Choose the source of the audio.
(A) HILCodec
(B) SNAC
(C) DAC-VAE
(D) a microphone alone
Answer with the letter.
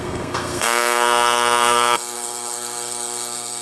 B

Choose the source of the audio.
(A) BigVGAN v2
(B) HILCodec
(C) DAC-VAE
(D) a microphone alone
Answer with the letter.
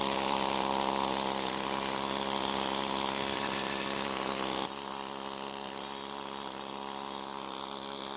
D